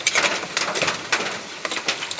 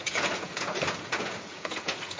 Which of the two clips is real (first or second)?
first